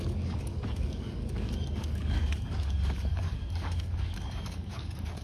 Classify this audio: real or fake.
fake